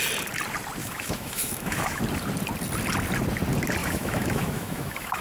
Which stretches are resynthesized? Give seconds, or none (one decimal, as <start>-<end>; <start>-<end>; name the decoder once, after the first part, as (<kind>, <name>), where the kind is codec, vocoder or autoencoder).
0.8-2.0 (autoencoder, DAC-VAE); 3.8-5.2